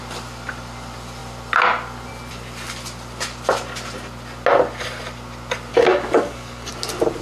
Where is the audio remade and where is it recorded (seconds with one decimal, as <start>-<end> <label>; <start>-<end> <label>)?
0.0-5.7 recorded; 5.7-6.7 remade; 6.7-7.2 recorded